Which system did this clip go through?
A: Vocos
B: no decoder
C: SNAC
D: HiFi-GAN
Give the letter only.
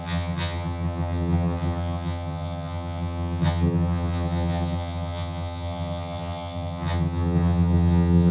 D